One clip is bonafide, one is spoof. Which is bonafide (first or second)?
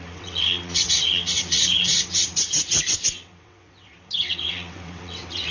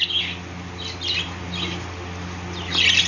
second